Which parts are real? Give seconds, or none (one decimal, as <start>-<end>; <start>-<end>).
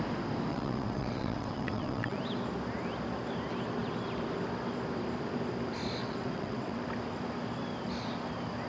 0.0-0.5; 2.2-6.0; 6.8-8.7